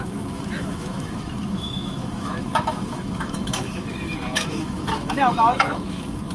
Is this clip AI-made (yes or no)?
yes